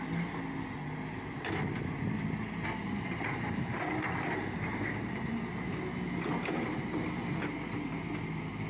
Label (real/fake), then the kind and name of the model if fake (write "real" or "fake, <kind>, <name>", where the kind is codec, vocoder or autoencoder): real